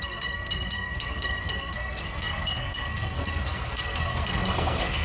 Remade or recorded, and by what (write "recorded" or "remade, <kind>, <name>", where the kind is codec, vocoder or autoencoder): remade, codec, SNAC